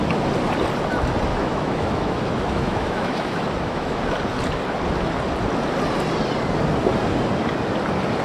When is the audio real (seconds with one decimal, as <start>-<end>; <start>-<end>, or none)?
0.0-1.3; 4.0-8.2